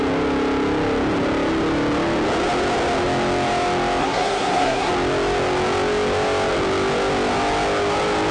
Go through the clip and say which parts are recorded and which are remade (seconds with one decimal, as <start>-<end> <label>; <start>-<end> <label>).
0.0-4.0 recorded; 4.0-4.9 remade; 4.9-8.3 recorded